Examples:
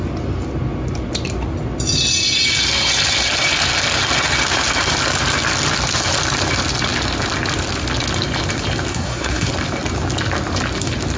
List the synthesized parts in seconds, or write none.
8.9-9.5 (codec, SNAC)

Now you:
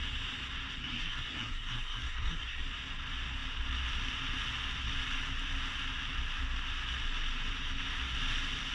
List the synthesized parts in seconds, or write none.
0.8-2.6 (codec, SNAC)

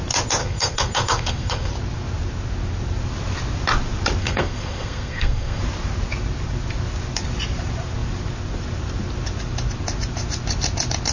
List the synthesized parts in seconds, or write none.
0.4-1.7 (codec, SNAC); 4.2-5.6